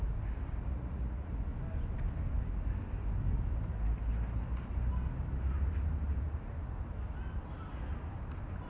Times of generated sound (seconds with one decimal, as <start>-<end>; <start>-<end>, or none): 0.7-1.3